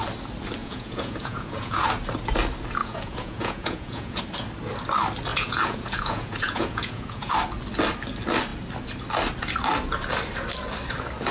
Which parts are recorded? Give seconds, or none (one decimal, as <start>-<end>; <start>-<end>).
0.0-0.6; 1.9-2.8; 4.2-5.3; 7.3-11.3